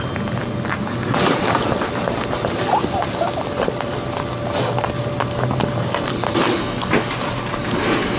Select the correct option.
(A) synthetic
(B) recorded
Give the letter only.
B